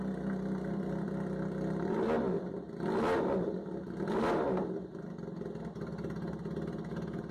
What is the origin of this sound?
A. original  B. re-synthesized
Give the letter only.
A